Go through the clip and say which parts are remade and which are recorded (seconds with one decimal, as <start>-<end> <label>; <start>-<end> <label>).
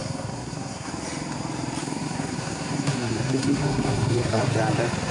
0.0-0.9 remade; 0.9-1.8 recorded; 1.8-4.5 remade; 4.5-5.1 recorded